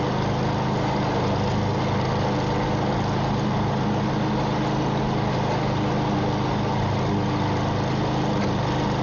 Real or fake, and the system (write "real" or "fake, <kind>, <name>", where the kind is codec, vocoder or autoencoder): real